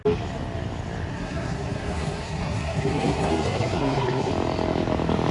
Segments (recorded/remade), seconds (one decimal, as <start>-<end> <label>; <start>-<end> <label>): 0.0-1.1 recorded; 1.1-4.3 remade; 4.3-5.3 recorded